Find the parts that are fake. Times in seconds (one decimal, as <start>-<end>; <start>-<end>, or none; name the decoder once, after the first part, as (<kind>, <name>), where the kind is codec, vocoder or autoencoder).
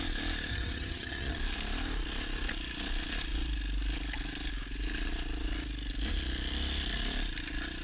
0.5-1.4 (vocoder, HiFi-GAN)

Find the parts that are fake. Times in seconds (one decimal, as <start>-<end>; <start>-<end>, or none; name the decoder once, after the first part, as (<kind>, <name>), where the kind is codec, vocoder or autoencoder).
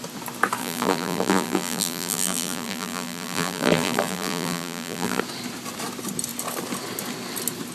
0.6-5.2 (vocoder, BigVGAN v2)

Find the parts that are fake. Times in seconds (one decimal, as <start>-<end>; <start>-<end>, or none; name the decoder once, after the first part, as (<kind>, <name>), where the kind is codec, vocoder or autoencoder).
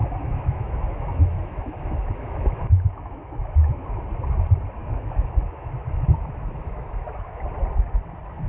0.0-4.0 (autoencoder, DAC-VAE); 4.8-7.4